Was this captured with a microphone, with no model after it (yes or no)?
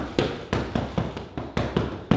yes